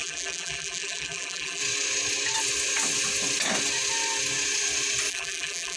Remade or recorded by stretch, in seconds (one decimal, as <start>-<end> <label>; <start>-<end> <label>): 0.0-1.6 remade; 1.6-5.1 recorded; 5.1-5.8 remade